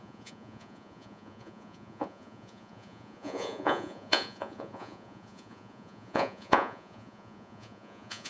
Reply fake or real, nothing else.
fake